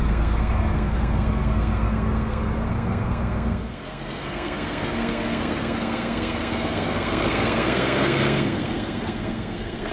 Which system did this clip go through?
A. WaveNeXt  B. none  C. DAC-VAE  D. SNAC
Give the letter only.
D